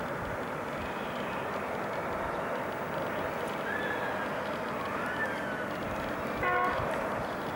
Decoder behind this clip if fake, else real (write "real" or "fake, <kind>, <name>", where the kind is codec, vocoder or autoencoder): real